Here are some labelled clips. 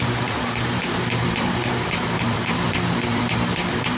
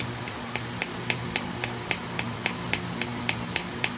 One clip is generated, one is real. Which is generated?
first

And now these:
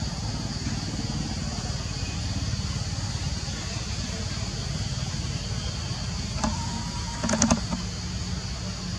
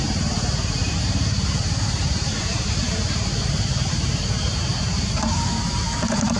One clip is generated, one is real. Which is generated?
second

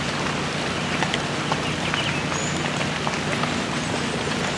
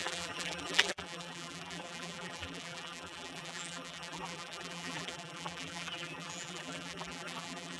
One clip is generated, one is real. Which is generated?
second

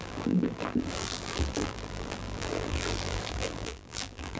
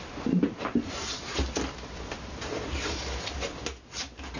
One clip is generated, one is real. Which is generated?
first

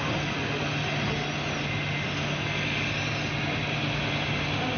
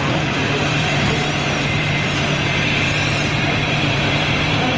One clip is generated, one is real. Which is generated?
second